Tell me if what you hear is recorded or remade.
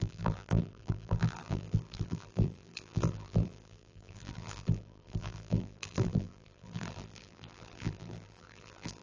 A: remade